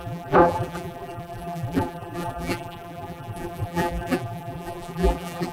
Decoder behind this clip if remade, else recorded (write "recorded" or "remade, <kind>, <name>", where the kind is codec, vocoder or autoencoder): remade, vocoder, BigVGAN v2